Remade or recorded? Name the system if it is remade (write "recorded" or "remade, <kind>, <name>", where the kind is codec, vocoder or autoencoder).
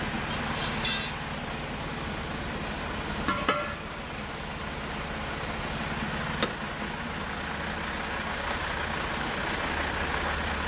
recorded